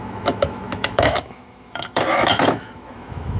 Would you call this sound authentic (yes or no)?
no